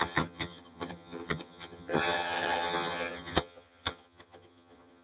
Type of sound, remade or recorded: remade